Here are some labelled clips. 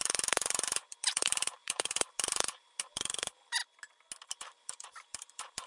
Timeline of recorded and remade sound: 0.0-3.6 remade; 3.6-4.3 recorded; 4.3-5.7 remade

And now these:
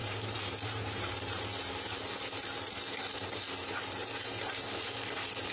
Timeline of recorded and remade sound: 0.0-1.4 remade; 1.4-4.0 recorded; 4.0-4.6 remade; 4.6-5.5 recorded

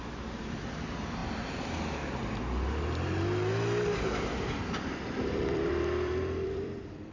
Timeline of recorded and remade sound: 0.0-1.2 remade; 1.2-5.5 recorded; 5.5-7.1 remade

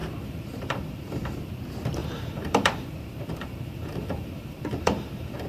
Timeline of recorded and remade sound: 0.0-1.5 remade; 1.5-2.0 recorded; 2.0-5.5 remade

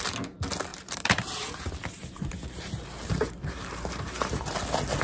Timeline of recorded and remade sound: 0.0-0.7 recorded; 0.7-1.3 remade; 1.3-2.0 recorded; 2.0-4.6 remade; 4.6-5.0 recorded